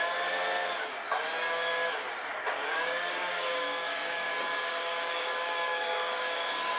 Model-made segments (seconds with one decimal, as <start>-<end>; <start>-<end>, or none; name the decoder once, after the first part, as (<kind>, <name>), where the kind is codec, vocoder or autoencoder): 2.3-6.8 (codec, DAC)